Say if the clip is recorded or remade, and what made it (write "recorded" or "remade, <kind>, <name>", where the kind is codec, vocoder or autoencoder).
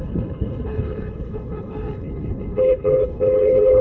remade, codec, HILCodec